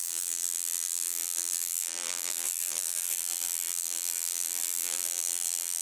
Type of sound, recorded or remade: remade